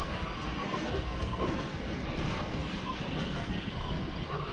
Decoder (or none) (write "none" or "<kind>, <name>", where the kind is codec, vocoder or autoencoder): codec, SNAC